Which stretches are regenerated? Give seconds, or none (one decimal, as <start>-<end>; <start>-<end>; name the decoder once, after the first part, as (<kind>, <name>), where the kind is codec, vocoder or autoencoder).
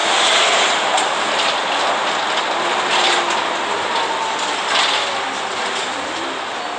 none